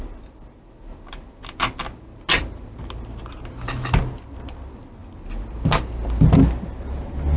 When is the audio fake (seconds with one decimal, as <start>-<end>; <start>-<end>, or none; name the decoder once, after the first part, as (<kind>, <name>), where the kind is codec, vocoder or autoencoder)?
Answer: none